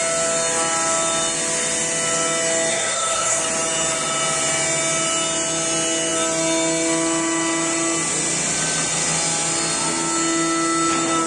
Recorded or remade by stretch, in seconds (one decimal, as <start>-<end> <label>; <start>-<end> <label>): 0.0-2.7 recorded; 2.7-3.4 remade; 3.4-11.3 recorded